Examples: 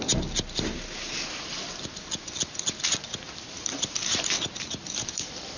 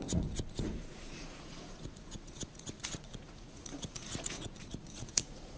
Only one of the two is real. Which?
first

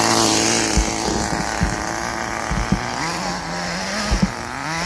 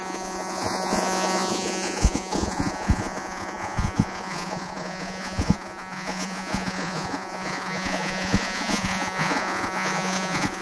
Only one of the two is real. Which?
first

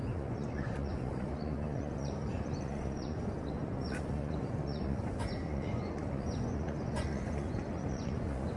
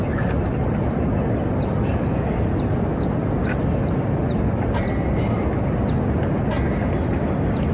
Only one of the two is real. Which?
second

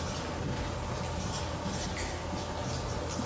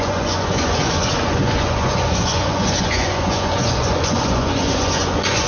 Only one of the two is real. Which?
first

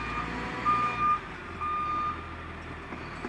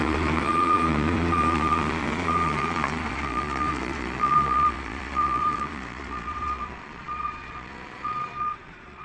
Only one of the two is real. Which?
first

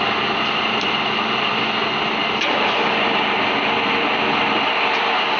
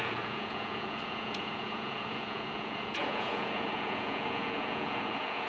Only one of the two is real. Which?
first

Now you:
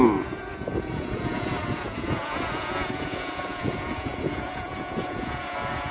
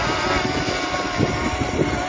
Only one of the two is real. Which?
second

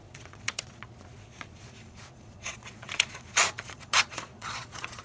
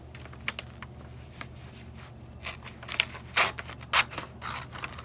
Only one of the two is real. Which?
second